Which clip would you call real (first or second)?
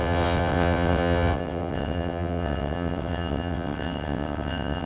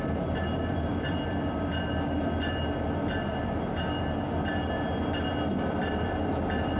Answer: second